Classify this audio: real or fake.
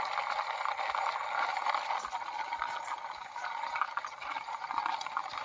real